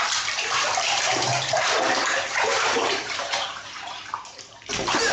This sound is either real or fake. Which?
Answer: fake